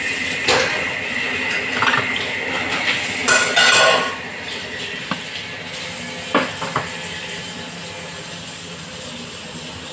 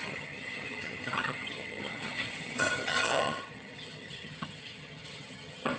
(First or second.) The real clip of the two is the first